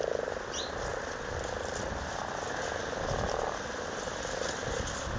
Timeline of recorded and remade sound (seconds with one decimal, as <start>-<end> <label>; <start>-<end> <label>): 0.0-5.2 recorded

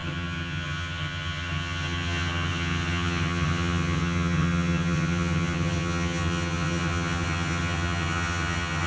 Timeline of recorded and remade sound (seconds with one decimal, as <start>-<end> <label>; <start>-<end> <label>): 0.0-8.9 remade